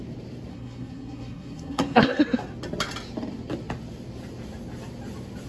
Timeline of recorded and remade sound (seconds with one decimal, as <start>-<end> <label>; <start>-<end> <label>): 0.0-0.5 recorded; 0.5-2.2 remade; 2.2-5.5 recorded